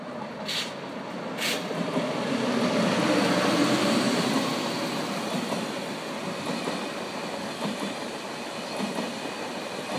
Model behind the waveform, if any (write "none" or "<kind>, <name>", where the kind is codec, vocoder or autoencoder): none